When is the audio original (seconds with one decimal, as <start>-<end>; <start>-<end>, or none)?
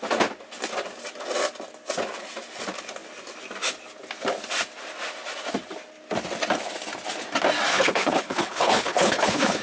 0.0-7.7